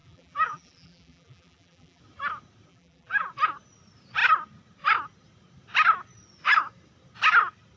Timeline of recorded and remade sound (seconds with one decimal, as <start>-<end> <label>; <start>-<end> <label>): 0.0-2.0 remade; 2.0-2.7 recorded; 2.7-3.3 remade; 3.3-7.8 recorded